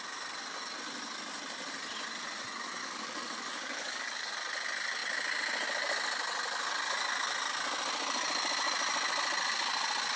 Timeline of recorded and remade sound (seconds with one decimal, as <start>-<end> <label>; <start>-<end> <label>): 0.0-2.8 recorded; 2.8-4.3 remade; 4.3-10.2 recorded